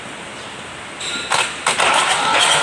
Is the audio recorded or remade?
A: recorded